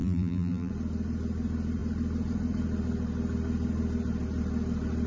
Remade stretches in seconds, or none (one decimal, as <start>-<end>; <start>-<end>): 0.0-0.7

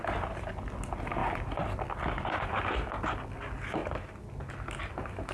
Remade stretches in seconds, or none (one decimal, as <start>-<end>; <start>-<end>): 1.2-2.6; 3.8-4.5